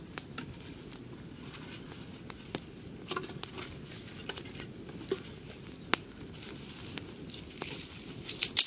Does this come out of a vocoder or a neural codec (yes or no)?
no